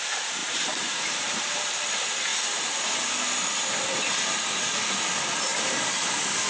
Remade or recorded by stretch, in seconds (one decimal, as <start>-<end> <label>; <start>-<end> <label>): 0.0-0.4 recorded; 0.4-1.8 remade; 1.8-5.5 recorded; 5.5-6.1 remade; 6.1-6.5 recorded